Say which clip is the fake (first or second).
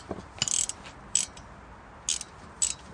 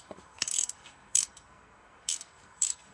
second